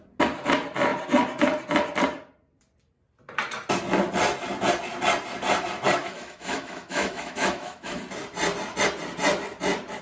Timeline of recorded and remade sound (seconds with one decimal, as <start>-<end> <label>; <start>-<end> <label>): 0.0-6.0 recorded; 6.0-8.0 remade; 8.0-10.0 recorded

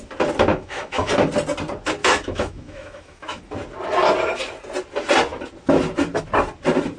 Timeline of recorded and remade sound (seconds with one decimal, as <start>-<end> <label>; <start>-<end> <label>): 0.0-0.5 recorded; 0.5-1.1 remade; 1.1-2.0 recorded; 2.0-3.4 remade; 3.4-7.0 recorded

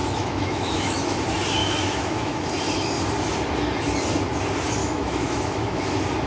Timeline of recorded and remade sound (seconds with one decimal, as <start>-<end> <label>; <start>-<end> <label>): 0.0-1.2 remade; 1.2-1.6 recorded; 1.6-2.5 remade; 2.5-4.8 recorded; 4.8-5.8 remade; 5.8-6.3 recorded